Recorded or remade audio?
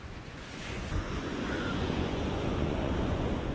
remade